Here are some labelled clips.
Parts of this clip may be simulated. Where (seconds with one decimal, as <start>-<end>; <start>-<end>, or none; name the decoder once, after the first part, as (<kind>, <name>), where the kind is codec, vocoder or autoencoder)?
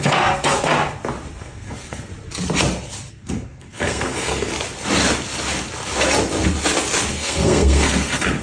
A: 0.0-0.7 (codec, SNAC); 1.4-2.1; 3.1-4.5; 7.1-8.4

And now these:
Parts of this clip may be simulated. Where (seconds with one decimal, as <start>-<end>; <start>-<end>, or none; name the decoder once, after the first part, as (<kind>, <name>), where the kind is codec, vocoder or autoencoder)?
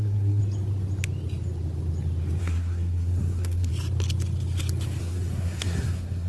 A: 0.0-0.4 (codec, SNAC); 2.4-3.7; 5.0-6.3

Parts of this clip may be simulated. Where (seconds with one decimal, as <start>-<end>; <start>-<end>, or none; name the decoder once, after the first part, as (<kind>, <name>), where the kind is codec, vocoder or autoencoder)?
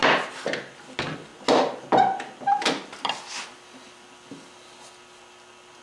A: none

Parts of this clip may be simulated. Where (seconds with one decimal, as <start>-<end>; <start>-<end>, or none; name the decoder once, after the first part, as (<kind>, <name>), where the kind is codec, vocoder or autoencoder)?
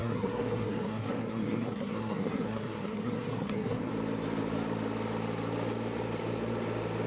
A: 0.0-3.9 (codec, SNAC)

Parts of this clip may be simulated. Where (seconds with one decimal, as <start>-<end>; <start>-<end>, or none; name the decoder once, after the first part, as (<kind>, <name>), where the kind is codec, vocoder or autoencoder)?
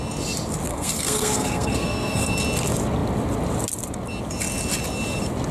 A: 0.7-2.3 (codec, SNAC)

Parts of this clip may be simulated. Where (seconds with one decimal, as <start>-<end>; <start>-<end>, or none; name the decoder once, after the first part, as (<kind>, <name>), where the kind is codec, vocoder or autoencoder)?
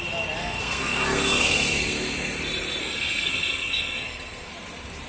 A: 0.4-2.4 (codec, SNAC); 2.8-4.5